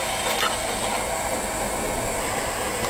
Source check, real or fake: real